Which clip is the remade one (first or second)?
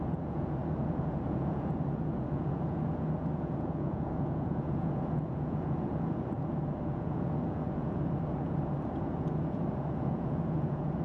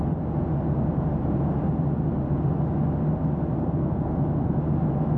first